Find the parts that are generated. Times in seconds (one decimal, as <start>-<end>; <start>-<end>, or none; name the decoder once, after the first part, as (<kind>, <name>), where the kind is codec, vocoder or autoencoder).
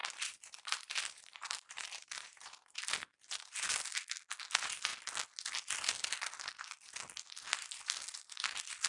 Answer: 0.0-2.8 (vocoder, BigVGAN v2)